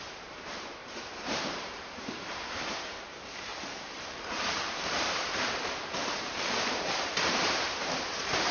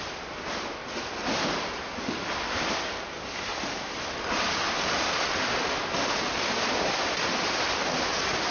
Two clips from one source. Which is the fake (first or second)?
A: first